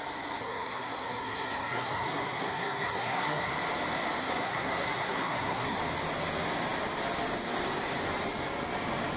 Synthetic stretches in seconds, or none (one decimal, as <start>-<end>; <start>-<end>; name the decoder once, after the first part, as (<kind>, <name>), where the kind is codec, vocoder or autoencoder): 0.4-3.5 (codec, SNAC); 4.2-5.8